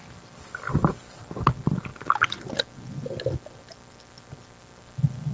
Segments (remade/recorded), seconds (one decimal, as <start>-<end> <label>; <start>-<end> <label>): 0.0-5.3 recorded